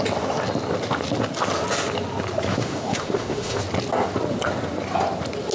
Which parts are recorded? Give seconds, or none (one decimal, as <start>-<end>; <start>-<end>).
0.0-2.5; 3.6-5.5